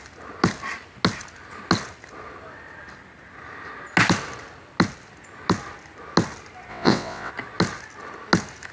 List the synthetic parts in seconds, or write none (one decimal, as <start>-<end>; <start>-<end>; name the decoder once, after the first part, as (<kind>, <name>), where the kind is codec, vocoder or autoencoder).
6.7-7.3 (vocoder, WaveNeXt)